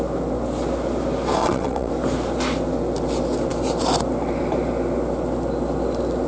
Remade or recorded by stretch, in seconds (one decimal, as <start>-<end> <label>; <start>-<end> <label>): 0.0-1.4 recorded; 1.4-1.9 remade; 1.9-6.3 recorded